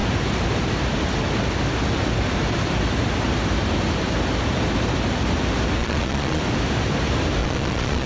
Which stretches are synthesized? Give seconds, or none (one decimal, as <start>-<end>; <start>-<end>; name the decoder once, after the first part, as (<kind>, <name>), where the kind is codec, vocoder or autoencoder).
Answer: 5.8-6.4 (vocoder, Vocos); 7.4-8.1